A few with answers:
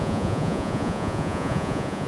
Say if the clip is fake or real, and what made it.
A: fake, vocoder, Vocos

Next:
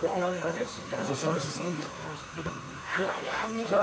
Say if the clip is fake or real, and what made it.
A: fake, codec, SNAC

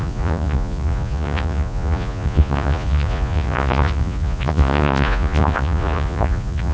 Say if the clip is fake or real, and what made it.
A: fake, vocoder, Vocos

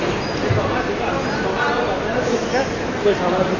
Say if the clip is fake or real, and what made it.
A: real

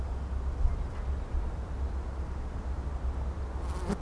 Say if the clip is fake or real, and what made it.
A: real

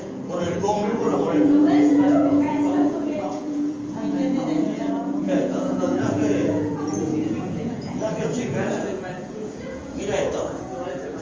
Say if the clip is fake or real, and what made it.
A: fake, vocoder, Vocos